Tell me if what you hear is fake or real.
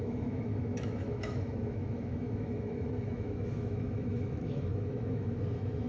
fake